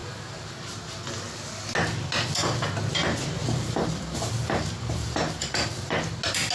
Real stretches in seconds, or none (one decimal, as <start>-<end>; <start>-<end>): 0.5-3.4; 6.0-6.5